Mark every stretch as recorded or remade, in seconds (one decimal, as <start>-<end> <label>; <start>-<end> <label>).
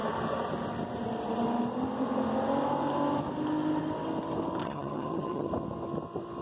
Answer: 0.0-4.6 recorded; 4.6-5.5 remade; 5.5-6.4 recorded